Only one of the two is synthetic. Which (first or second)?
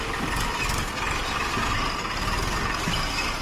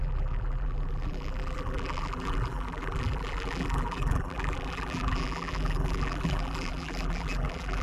second